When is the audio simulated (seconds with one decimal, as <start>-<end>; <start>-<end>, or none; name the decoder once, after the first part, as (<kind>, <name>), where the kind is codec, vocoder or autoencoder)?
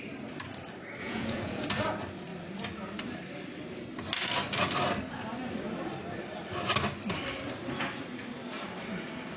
1.0-1.7 (vocoder, Vocos)